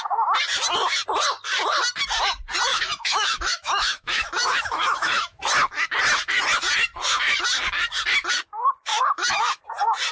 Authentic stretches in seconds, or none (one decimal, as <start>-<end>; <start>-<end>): 0.0-2.7; 5.4-8.9; 9.6-10.1